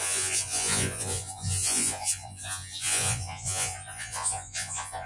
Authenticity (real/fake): fake